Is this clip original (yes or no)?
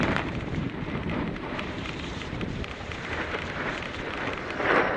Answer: no